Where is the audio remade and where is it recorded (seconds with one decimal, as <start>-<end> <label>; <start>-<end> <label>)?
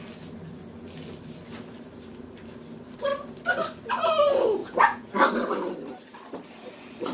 0.0-4.6 recorded; 4.6-5.1 remade; 5.1-7.1 recorded